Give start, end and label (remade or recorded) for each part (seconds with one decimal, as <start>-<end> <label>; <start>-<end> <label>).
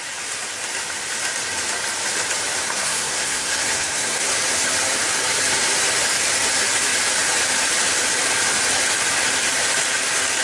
0.0-2.6 recorded; 2.6-4.3 remade; 4.3-10.4 recorded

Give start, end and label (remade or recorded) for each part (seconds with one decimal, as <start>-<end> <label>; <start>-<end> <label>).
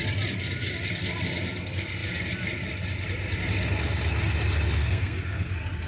0.0-4.8 recorded; 4.8-5.5 remade; 5.5-5.9 recorded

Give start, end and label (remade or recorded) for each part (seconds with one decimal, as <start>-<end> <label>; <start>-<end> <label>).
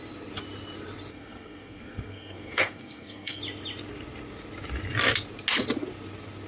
0.0-1.1 recorded; 1.1-3.4 remade; 3.4-6.5 recorded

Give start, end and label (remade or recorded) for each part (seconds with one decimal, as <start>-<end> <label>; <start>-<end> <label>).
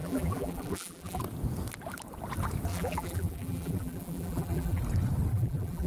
0.0-1.2 remade; 1.2-2.7 recorded; 2.7-4.8 remade; 4.8-5.3 recorded; 5.3-5.9 remade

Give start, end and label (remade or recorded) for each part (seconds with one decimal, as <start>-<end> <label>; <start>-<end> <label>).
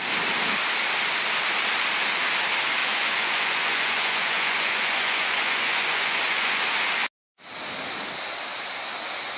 0.0-2.8 recorded; 2.8-6.6 remade; 6.6-9.4 recorded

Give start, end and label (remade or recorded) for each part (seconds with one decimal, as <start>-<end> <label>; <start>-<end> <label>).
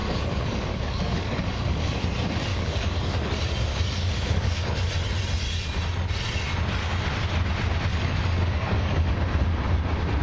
0.0-2.0 remade; 2.0-2.5 recorded; 2.5-3.3 remade; 3.3-3.7 recorded; 3.7-4.9 remade; 4.9-7.9 recorded; 7.9-9.1 remade; 9.1-10.2 recorded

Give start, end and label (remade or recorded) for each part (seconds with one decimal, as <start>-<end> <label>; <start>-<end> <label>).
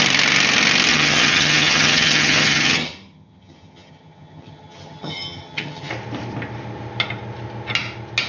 0.0-0.9 recorded; 0.9-5.9 remade; 5.9-8.3 recorded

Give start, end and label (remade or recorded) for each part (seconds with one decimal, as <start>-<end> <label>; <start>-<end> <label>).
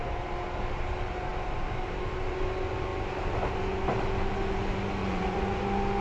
0.0-5.0 recorded; 5.0-5.6 remade; 5.6-6.0 recorded